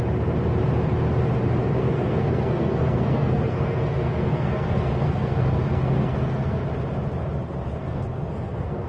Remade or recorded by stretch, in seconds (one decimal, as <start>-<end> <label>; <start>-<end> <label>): 0.0-1.8 recorded; 1.8-6.6 remade; 6.6-7.8 recorded; 7.8-8.9 remade